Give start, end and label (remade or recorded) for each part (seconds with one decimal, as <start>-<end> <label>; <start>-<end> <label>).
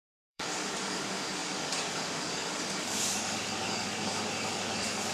0.0-5.1 remade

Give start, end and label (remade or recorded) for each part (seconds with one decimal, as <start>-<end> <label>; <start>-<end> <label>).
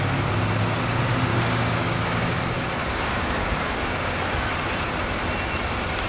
0.0-1.3 recorded; 1.3-2.4 remade; 2.4-2.8 recorded; 2.8-4.2 remade; 4.2-6.1 recorded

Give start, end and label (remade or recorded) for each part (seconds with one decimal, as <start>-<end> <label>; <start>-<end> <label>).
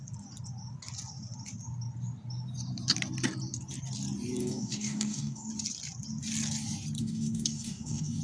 0.0-4.4 recorded; 4.4-5.5 remade; 5.5-7.0 recorded; 7.0-8.2 remade